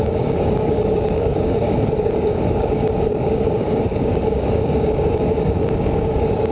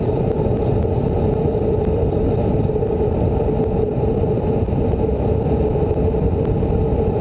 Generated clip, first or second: first